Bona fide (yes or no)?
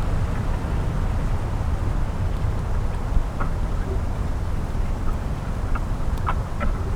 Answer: yes